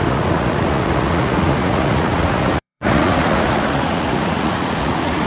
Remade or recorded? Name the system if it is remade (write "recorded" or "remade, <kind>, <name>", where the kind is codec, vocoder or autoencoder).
remade, vocoder, Vocos